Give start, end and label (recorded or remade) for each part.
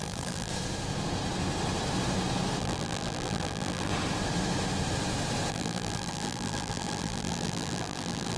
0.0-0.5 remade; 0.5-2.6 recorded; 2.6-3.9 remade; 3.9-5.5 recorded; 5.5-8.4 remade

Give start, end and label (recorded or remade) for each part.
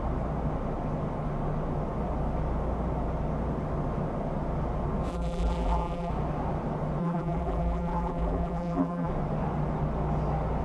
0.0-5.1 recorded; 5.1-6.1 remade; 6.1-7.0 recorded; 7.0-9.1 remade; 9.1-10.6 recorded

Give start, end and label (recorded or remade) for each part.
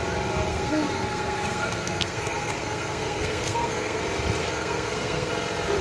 0.0-0.5 recorded; 0.5-4.0 remade; 4.0-4.4 recorded; 4.4-5.3 remade; 5.3-5.8 recorded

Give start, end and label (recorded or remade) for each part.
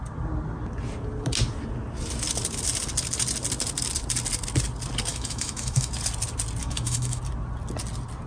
0.0-5.1 recorded; 5.1-5.9 remade; 5.9-6.6 recorded; 6.6-7.2 remade; 7.2-8.3 recorded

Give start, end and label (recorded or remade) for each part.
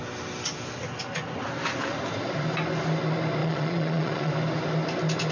0.0-3.4 recorded; 3.4-4.3 remade; 4.3-5.3 recorded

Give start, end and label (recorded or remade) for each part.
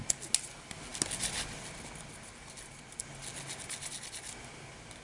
0.0-5.0 recorded